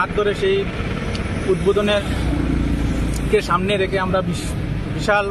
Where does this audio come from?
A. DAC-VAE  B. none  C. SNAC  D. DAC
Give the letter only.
B